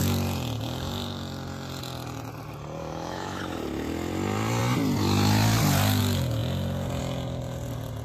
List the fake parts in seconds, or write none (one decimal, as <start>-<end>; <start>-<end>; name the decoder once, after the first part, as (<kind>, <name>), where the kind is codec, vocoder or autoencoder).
2.8-3.4 (autoencoder, DAC-VAE)